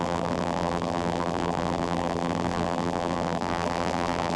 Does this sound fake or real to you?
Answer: fake